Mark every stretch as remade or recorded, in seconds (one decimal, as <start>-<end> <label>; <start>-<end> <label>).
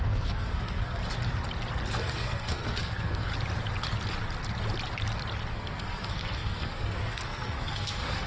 0.0-1.0 remade; 1.0-2.0 recorded; 2.0-3.3 remade; 3.3-5.5 recorded; 5.5-8.3 remade